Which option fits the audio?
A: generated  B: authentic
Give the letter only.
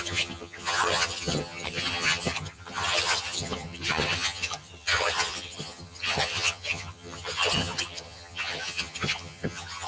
A